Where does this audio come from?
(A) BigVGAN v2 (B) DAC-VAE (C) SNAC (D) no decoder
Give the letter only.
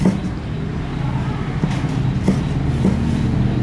D